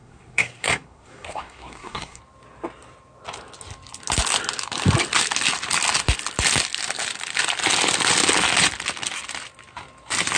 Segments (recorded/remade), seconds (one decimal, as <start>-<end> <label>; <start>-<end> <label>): 0.0-2.2 remade; 2.2-10.4 recorded